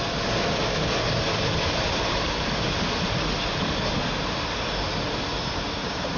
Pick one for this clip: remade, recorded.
recorded